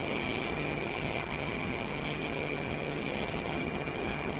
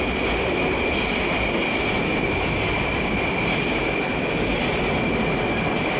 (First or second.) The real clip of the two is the second